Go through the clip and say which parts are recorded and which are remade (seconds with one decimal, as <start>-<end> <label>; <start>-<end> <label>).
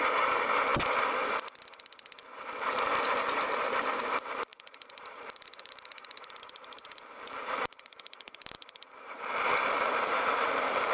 0.0-0.7 remade; 0.7-4.0 recorded; 4.0-10.9 remade